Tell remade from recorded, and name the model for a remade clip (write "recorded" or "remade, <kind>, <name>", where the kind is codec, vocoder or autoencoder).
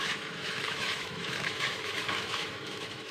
remade, autoencoder, DAC-VAE